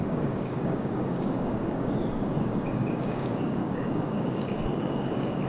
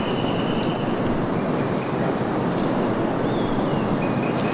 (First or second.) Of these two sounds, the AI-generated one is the first